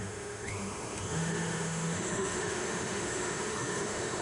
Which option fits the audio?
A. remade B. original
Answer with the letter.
A